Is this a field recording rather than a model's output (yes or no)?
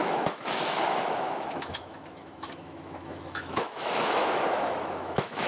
no